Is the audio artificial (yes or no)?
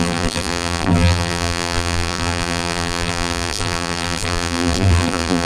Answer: yes